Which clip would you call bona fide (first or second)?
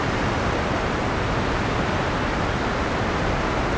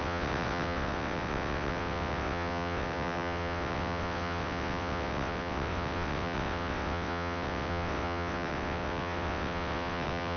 first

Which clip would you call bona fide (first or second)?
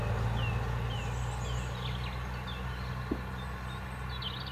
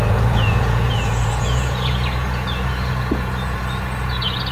first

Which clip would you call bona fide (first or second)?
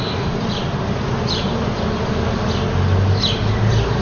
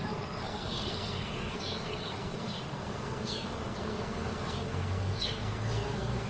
first